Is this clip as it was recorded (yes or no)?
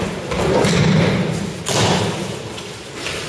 yes